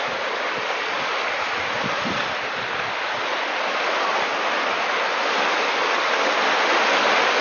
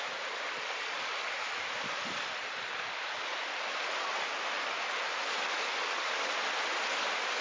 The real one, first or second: first